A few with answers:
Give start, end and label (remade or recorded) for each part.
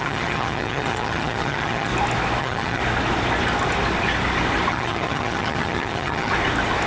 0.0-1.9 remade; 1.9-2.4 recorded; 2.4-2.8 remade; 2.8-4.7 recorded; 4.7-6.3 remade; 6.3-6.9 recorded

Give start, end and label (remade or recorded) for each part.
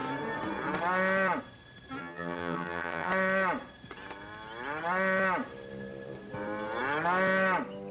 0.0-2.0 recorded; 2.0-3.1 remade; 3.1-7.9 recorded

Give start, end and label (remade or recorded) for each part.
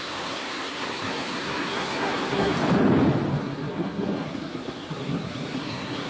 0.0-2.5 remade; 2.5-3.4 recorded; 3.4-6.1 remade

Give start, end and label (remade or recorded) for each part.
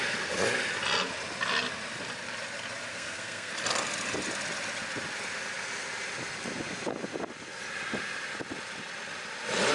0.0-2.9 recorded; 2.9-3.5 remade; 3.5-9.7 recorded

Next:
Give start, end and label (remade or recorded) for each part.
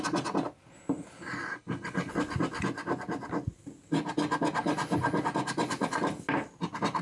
0.0-1.5 recorded; 1.5-2.1 remade; 2.1-7.0 recorded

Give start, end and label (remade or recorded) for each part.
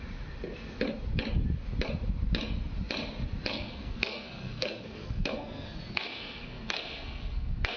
0.0-3.5 recorded; 3.5-7.8 remade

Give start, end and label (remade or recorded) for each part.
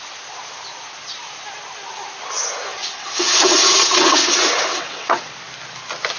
0.0-2.8 recorded; 2.8-5.3 remade; 5.3-6.2 recorded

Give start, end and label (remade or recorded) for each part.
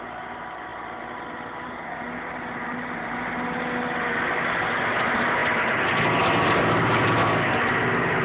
0.0-8.2 recorded